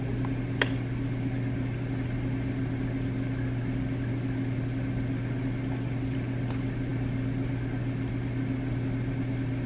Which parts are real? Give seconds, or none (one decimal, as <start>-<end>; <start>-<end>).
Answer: 0.0-9.7